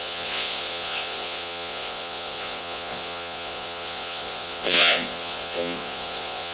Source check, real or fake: fake